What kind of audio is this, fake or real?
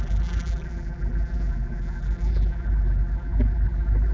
fake